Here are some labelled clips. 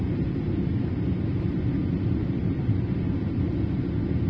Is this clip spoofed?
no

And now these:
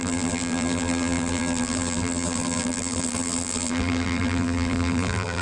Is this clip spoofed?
yes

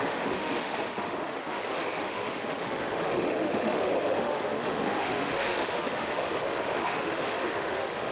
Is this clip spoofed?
yes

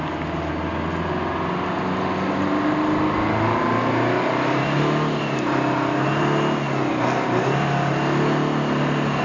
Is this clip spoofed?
no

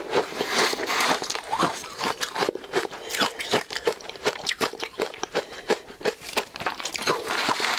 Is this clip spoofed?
yes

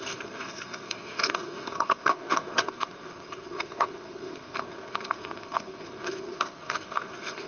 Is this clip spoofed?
yes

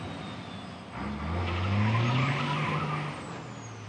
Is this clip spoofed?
no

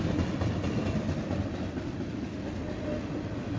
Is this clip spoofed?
no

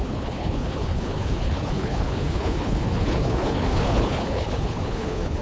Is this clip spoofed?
yes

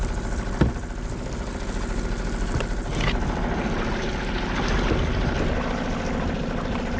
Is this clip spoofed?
no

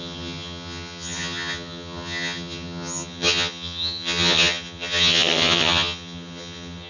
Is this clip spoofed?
yes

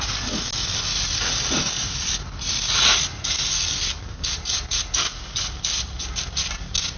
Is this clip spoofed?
no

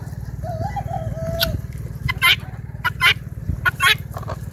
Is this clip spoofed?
no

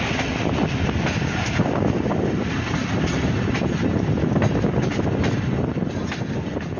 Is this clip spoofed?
no